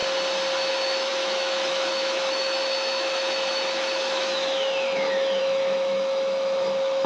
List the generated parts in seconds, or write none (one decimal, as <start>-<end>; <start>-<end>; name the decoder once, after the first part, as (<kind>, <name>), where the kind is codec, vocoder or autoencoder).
0.7-7.1 (autoencoder, DAC-VAE)